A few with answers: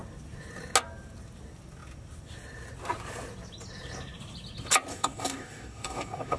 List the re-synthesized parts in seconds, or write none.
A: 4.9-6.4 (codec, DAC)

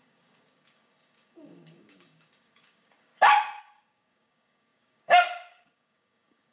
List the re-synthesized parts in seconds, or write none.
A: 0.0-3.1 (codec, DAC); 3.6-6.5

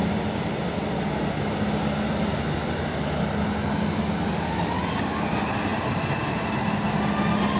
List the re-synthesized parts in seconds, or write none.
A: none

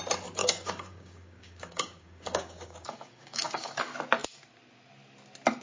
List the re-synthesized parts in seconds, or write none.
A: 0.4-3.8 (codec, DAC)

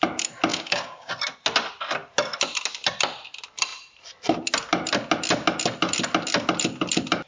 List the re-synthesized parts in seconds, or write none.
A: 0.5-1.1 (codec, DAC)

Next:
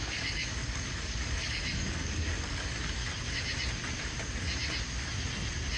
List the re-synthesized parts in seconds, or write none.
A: 0.0-3.0 (codec, DAC)